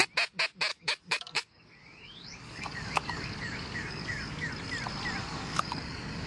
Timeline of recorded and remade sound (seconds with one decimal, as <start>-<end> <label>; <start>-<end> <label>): 0.0-0.7 recorded; 0.7-4.5 remade; 4.5-5.2 recorded; 5.2-6.3 remade